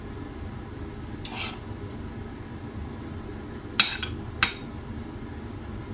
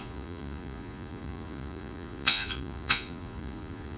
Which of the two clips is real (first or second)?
first